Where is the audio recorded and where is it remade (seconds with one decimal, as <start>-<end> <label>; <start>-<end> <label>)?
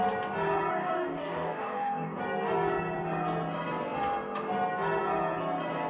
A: 0.0-0.7 recorded; 0.7-2.2 remade; 2.2-5.9 recorded